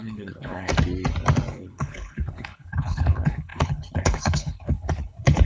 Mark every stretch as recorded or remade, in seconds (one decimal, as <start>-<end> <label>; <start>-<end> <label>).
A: 0.0-0.7 remade; 0.7-1.5 recorded; 1.5-5.4 remade

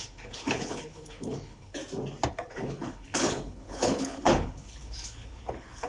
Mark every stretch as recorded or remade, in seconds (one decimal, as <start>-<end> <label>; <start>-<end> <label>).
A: 0.0-1.8 remade; 1.8-2.3 recorded; 2.3-5.9 remade

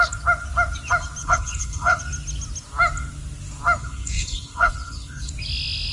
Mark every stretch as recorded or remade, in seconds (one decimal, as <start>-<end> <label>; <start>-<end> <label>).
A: 0.0-1.2 recorded; 1.2-2.0 remade; 2.0-3.8 recorded; 3.8-5.3 remade; 5.3-5.9 recorded

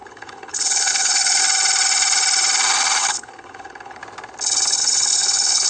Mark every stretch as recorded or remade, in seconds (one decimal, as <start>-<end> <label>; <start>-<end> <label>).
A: 0.0-1.4 remade; 1.4-3.0 recorded; 3.0-4.0 remade; 4.0-4.8 recorded; 4.8-5.7 remade